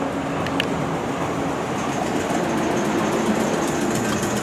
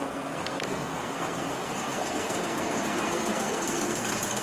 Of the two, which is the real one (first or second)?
first